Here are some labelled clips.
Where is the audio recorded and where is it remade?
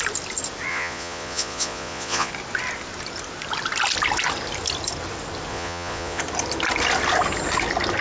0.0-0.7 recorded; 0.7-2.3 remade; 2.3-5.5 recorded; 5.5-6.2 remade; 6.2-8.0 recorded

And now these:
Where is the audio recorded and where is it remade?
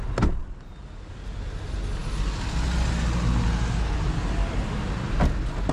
0.0-5.7 recorded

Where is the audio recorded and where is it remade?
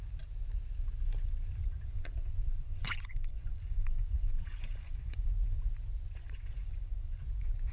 0.0-1.6 recorded; 1.6-5.3 remade; 5.3-6.2 recorded; 6.2-7.2 remade; 7.2-7.7 recorded